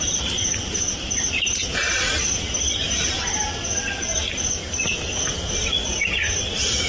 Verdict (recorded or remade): recorded